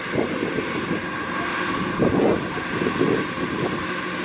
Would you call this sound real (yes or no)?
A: yes